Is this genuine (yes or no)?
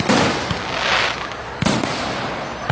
yes